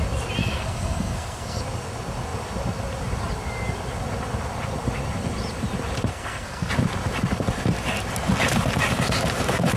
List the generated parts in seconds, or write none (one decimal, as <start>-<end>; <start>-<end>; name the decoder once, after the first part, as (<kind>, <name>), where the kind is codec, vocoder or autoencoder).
0.4-1.6 (codec, SNAC); 6.1-6.7